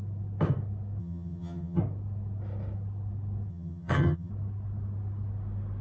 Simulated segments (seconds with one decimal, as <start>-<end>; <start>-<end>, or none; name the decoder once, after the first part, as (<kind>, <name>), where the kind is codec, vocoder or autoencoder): 1.0-1.8 (vocoder, HiFi-GAN); 3.5-4.3